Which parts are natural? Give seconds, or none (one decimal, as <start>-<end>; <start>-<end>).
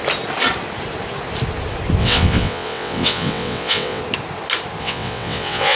0.0-2.0; 4.0-4.8